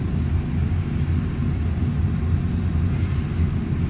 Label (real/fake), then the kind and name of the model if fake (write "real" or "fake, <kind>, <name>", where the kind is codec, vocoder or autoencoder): real